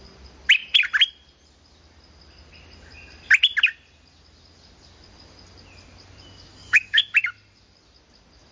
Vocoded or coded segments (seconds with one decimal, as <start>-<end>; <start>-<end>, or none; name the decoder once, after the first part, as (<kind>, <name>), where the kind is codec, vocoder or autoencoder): 6.5-7.0 (codec, DAC)